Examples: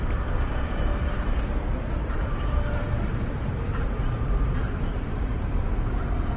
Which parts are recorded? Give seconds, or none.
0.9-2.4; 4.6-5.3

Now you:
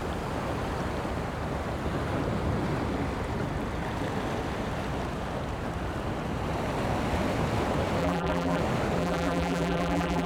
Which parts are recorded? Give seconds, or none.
0.0-8.0; 8.6-9.0